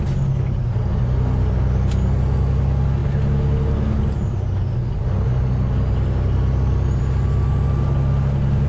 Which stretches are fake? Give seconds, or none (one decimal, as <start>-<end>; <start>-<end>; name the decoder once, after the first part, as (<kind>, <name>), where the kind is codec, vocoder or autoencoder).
none